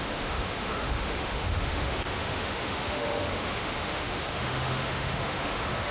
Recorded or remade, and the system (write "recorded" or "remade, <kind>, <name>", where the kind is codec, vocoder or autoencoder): remade, autoencoder, DAC-VAE